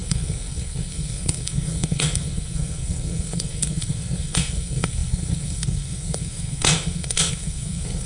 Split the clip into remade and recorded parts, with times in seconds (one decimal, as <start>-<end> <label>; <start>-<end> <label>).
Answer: 0.0-8.1 remade